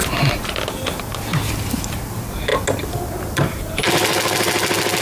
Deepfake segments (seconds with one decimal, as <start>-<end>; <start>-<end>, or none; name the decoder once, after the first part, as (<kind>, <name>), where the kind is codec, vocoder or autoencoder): none